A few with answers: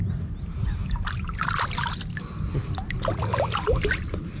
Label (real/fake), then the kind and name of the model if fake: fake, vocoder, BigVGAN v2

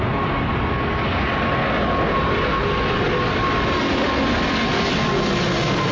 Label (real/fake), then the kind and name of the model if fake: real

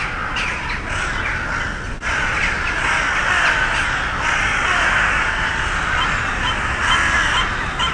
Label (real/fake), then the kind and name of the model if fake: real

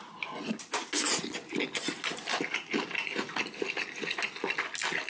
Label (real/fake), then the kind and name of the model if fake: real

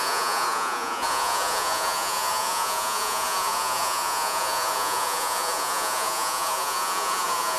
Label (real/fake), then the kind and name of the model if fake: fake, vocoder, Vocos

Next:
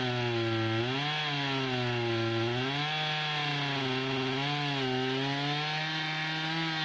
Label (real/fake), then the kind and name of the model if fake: real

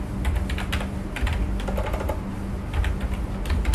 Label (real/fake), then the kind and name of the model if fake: real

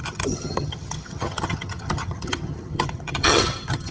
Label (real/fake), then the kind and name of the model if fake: fake, vocoder, HiFi-GAN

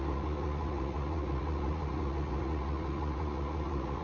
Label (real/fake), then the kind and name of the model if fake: fake, vocoder, Vocos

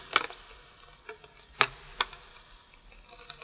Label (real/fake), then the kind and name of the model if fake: real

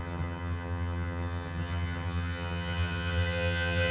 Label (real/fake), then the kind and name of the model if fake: fake, vocoder, HiFi-GAN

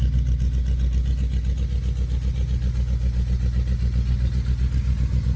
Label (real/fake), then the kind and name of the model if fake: real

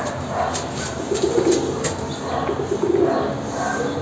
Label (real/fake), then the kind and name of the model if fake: real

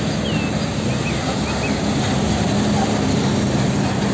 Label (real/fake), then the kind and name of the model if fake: real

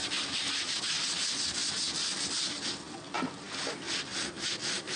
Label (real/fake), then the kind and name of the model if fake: real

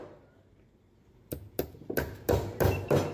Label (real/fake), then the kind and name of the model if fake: real